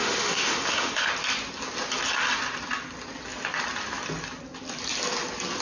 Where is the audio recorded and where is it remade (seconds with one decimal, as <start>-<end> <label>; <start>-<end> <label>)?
0.0-1.0 remade; 1.0-5.6 recorded